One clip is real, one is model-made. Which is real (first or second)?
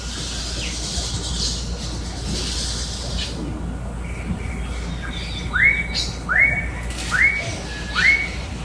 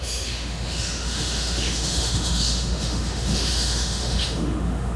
first